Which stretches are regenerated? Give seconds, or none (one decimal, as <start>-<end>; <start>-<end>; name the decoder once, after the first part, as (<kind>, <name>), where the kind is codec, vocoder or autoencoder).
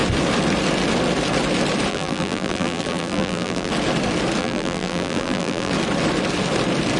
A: 1.9-3.7 (vocoder, BigVGAN v2); 4.4-5.7